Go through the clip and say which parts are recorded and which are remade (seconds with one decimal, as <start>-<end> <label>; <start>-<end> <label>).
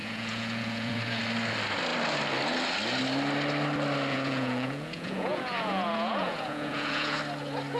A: 0.0-1.2 remade; 1.2-4.1 recorded; 4.1-7.2 remade; 7.2-7.8 recorded